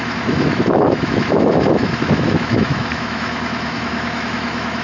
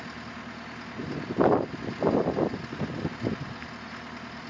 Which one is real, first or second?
second